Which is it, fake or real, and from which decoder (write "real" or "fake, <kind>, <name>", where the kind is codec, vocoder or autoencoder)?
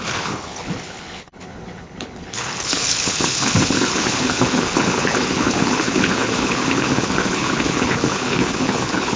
fake, codec, HILCodec